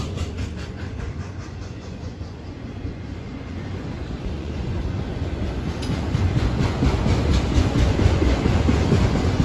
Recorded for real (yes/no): no